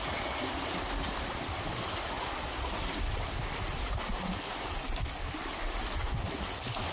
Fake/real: real